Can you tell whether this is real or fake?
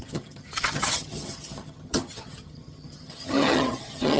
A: fake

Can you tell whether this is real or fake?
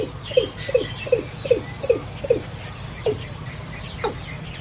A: real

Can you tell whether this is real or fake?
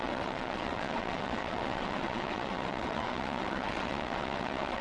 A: fake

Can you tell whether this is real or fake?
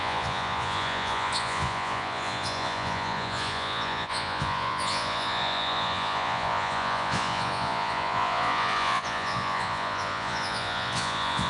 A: fake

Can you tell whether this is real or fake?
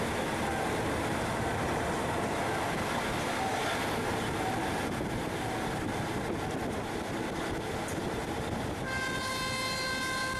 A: real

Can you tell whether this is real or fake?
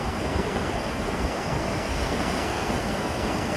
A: fake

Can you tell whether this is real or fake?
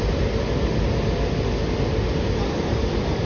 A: real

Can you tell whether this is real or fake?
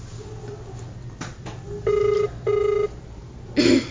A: real